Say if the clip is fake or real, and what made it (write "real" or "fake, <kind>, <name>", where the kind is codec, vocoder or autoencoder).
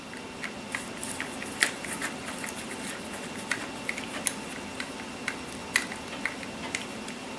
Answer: real